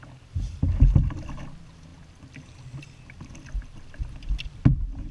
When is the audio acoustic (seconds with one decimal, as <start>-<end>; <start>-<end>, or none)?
0.0-5.1